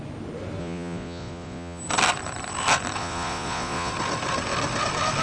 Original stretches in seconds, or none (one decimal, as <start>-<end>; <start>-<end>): 0.0-0.6; 1.8-3.0; 3.9-5.2